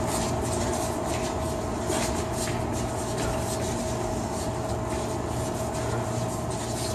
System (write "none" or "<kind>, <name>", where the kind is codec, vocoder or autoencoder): none